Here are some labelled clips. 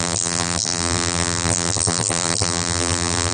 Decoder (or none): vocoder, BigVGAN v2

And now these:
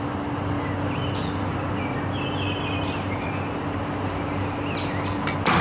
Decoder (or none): none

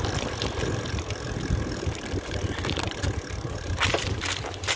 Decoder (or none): vocoder, BigVGAN v2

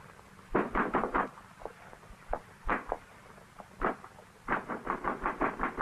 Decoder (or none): none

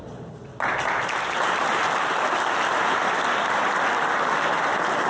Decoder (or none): none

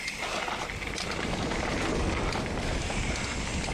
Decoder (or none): none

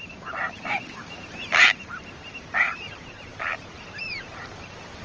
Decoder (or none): vocoder, BigVGAN v2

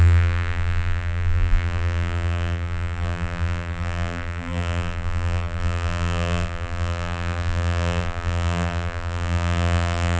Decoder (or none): vocoder, BigVGAN v2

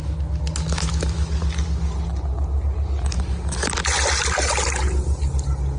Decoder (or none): none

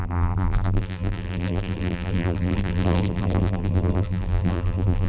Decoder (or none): vocoder, BigVGAN v2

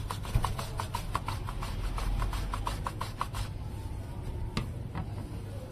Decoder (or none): none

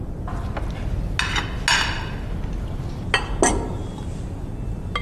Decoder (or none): none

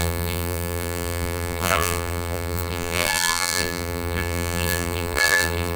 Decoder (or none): vocoder, BigVGAN v2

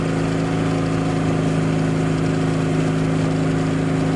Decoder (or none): none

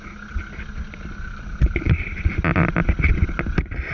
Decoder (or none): none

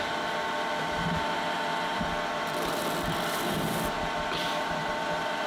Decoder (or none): vocoder, BigVGAN v2